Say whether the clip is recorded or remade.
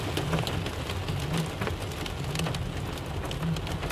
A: recorded